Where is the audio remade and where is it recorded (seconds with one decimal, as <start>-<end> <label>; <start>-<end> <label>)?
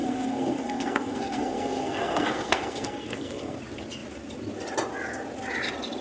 0.0-3.6 remade; 3.6-6.0 recorded